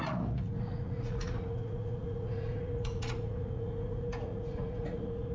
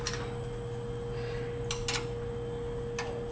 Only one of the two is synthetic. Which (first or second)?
first